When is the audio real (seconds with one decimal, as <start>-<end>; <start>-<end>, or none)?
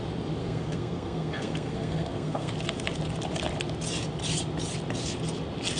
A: 0.0-0.4; 2.5-5.8